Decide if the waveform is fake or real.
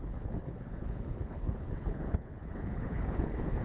fake